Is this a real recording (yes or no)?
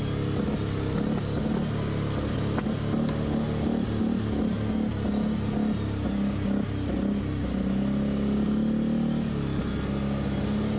yes